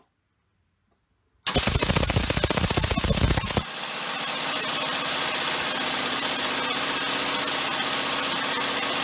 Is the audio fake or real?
real